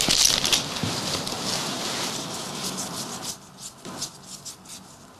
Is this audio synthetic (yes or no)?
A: no